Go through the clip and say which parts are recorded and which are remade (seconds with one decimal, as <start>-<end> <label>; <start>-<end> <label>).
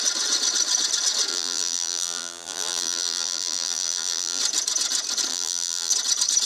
0.0-1.3 recorded; 1.3-4.4 remade; 4.4-5.3 recorded; 5.3-5.9 remade; 5.9-6.4 recorded